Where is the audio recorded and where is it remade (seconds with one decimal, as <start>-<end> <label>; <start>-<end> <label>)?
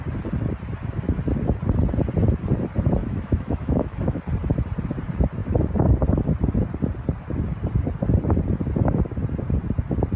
0.0-3.0 recorded; 3.0-4.2 remade; 4.2-10.2 recorded